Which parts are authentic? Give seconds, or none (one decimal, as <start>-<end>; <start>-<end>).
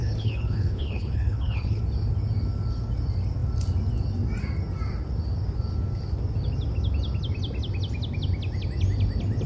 1.8-9.5